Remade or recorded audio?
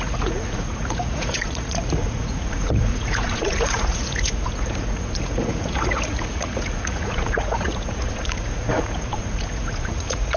remade